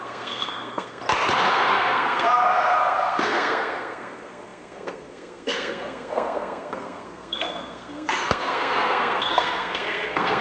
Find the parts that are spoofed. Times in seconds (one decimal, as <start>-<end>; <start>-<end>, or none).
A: 0.0-1.0; 1.5-10.4

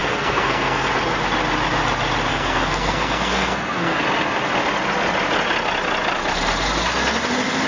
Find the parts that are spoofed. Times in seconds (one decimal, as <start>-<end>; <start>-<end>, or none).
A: 0.0-0.9; 2.3-4.0

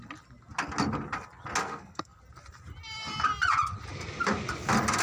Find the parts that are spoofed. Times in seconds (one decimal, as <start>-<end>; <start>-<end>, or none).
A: 1.6-2.2

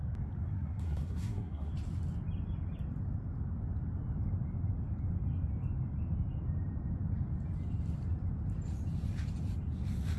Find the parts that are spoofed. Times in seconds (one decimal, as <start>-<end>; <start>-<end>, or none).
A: 0.5-1.7

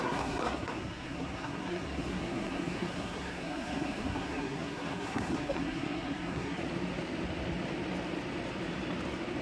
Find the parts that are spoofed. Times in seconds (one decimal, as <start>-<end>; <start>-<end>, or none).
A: 0.0-6.6